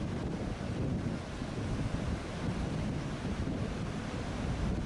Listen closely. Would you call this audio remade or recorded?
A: recorded